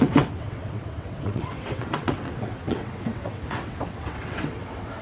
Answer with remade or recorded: remade